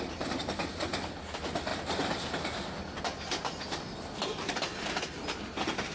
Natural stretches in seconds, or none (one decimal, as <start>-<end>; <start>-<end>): 0.0-5.9